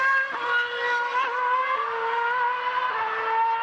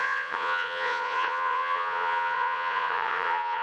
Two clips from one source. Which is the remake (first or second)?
second